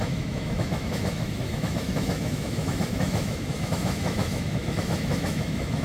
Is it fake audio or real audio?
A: fake